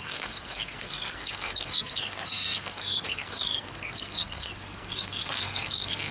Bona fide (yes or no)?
no